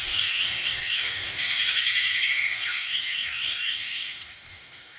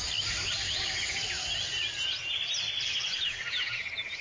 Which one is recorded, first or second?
second